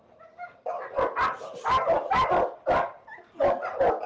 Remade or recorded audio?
recorded